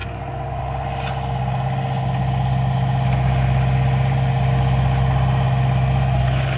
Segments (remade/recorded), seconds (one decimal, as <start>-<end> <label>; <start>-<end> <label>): 0.0-6.6 recorded